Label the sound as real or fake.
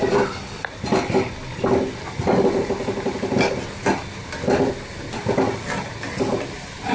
real